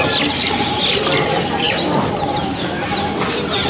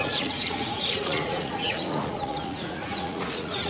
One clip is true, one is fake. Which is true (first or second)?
first